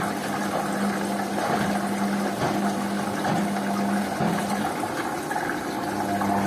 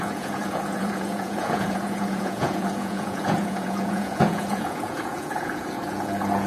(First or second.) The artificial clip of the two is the second